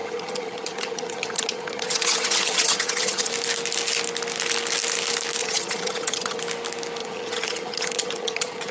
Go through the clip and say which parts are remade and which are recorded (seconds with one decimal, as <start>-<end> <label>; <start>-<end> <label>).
0.0-3.3 remade; 3.3-5.4 recorded; 5.4-6.4 remade; 6.4-7.0 recorded; 7.0-8.7 remade